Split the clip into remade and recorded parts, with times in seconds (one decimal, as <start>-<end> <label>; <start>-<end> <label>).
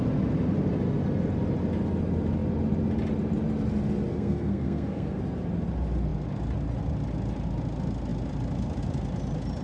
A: 0.0-4.1 recorded; 4.1-5.2 remade; 5.2-9.6 recorded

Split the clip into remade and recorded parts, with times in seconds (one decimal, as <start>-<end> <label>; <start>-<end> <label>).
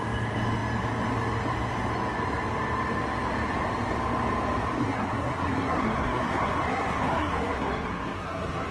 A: 0.0-4.8 recorded; 4.8-8.7 remade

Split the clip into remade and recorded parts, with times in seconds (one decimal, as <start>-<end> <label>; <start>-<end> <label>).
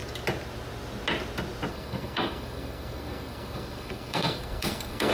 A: 0.0-1.7 recorded; 1.7-5.1 remade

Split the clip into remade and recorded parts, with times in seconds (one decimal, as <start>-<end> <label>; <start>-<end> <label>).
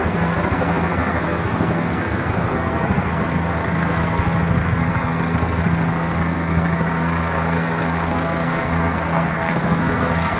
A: 0.0-10.4 remade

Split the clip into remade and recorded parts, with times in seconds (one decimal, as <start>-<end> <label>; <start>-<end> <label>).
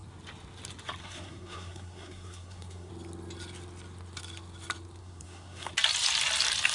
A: 0.0-1.0 recorded; 1.0-2.9 remade; 2.9-5.0 recorded; 5.0-5.7 remade; 5.7-6.7 recorded